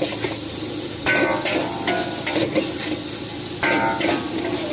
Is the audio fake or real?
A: real